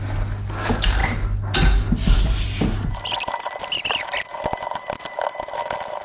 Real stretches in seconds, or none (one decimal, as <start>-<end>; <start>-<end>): 0.0-6.0